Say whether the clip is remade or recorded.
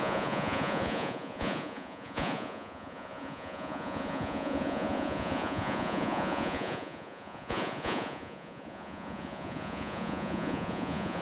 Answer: remade